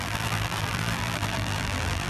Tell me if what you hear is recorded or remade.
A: remade